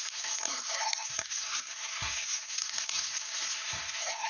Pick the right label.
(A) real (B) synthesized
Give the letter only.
B